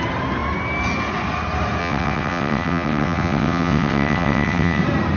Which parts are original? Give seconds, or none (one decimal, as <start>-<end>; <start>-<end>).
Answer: 0.0-1.8; 4.8-5.2

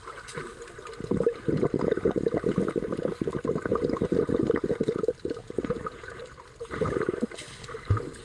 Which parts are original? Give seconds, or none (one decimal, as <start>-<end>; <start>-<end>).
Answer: 0.0-5.4; 6.2-8.2

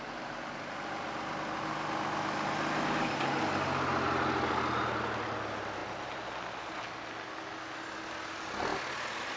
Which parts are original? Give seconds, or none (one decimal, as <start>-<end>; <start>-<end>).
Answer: 0.0-9.4